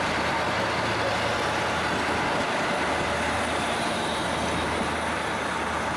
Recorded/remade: recorded